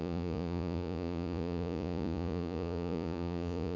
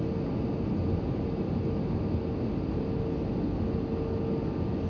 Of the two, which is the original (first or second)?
second